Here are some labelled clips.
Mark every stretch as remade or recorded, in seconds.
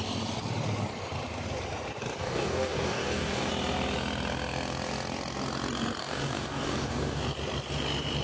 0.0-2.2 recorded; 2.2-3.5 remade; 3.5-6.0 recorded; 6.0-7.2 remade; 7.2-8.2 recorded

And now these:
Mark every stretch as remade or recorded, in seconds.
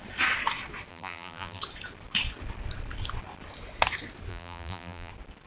0.0-0.9 recorded; 0.9-1.6 remade; 1.6-4.3 recorded; 4.3-5.1 remade; 5.1-5.5 recorded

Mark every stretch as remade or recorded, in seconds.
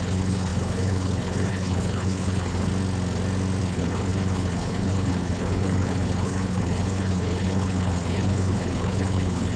0.0-2.7 remade; 2.7-3.6 recorded; 3.6-9.6 remade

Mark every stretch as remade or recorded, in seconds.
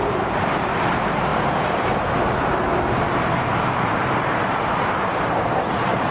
0.0-6.1 remade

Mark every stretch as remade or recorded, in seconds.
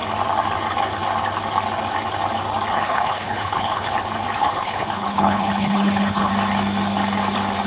0.0-2.7 recorded; 2.7-3.9 remade; 3.9-4.4 recorded; 4.4-6.3 remade; 6.3-7.7 recorded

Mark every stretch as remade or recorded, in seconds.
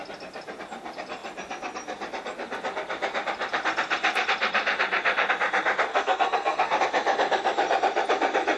0.0-5.9 recorded; 5.9-6.8 remade; 6.8-8.6 recorded